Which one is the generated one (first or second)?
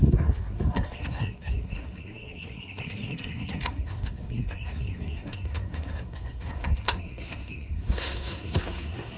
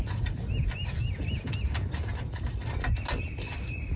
first